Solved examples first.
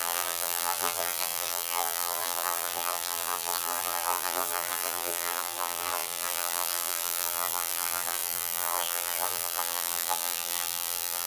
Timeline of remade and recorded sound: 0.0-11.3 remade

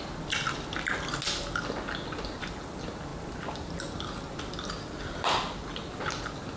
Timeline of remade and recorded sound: 0.0-6.6 recorded

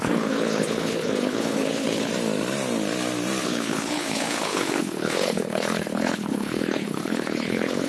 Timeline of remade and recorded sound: 0.0-2.1 remade; 2.1-3.4 recorded; 3.4-7.9 remade

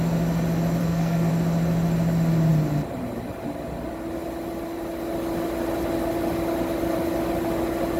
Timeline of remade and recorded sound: 0.0-0.8 recorded; 0.8-1.3 remade; 1.3-8.0 recorded

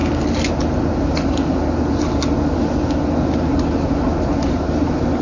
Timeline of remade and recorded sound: 0.0-5.2 recorded